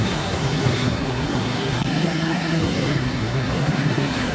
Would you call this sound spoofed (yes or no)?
yes